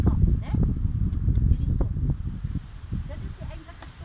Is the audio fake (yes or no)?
no